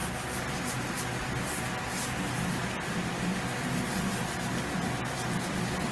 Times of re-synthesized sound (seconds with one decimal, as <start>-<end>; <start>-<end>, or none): none

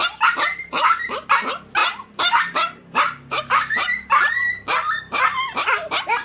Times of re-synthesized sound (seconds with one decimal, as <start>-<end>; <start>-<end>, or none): 1.8-4.1

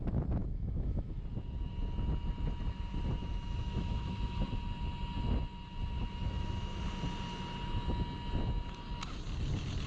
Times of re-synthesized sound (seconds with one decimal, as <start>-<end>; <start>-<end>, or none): 0.4-1.2; 3.2-4.4; 6.0-6.8

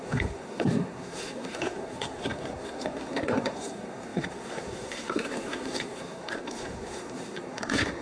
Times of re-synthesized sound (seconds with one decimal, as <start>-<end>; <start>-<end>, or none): 0.0-8.0

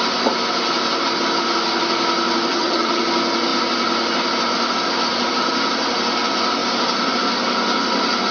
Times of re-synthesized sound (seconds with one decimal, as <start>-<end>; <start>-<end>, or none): 2.5-3.0

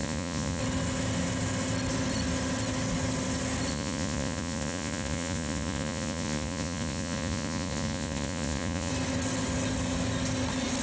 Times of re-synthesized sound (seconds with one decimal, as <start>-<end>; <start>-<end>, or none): 0.0-0.6; 3.7-8.9

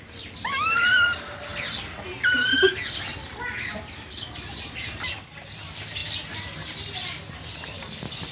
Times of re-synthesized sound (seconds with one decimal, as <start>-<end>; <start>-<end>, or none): none